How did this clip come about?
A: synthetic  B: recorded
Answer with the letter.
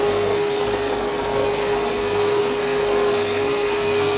A